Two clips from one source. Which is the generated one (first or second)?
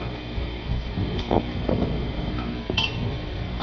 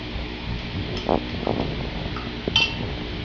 first